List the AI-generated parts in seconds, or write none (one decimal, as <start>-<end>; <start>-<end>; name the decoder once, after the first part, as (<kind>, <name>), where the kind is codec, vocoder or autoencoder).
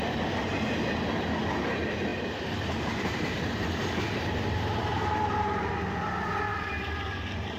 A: 2.1-5.7 (vocoder, BigVGAN v2); 6.5-7.6